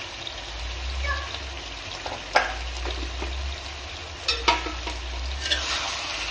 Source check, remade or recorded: recorded